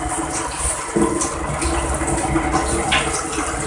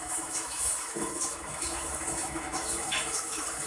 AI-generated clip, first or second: second